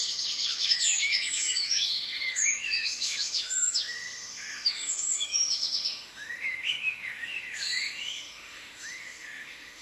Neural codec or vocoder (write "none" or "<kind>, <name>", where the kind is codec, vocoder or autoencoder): autoencoder, DAC-VAE